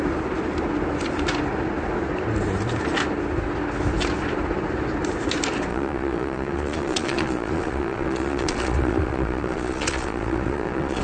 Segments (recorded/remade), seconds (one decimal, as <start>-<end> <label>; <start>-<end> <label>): 0.0-5.7 recorded; 5.7-11.0 remade